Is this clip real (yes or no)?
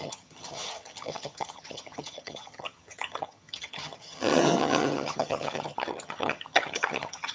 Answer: no